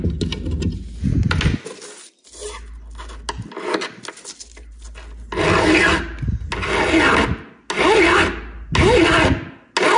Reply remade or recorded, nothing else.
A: recorded